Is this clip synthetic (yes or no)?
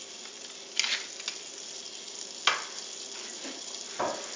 no